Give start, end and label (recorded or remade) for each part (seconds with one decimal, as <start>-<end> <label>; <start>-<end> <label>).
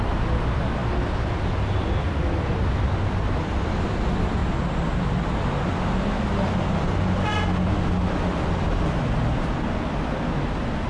0.0-10.9 recorded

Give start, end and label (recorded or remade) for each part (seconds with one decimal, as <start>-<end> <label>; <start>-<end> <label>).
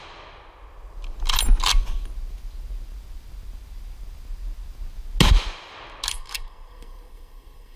0.0-6.1 recorded; 6.1-7.8 remade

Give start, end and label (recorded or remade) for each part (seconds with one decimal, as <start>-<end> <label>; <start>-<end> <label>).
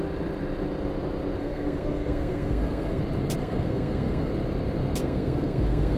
0.0-1.4 recorded; 1.4-3.0 remade; 3.0-3.4 recorded; 3.4-4.3 remade; 4.3-5.0 recorded; 5.0-6.0 remade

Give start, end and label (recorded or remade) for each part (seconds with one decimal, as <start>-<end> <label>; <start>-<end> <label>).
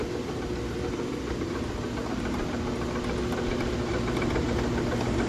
0.0-5.3 recorded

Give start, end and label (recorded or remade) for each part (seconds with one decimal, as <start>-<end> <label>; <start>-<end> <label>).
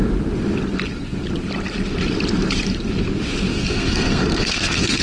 0.0-3.5 recorded; 3.5-5.0 remade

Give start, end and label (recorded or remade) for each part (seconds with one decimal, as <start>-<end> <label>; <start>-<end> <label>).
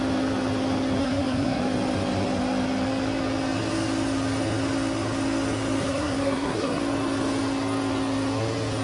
0.0-1.0 recorded; 1.0-1.6 remade; 1.6-5.8 recorded; 5.8-6.8 remade; 6.8-8.8 recorded